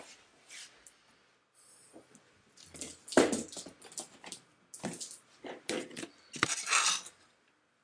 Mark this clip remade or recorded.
recorded